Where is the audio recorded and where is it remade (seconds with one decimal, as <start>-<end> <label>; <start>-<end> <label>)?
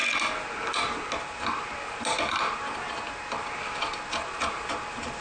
0.0-5.2 recorded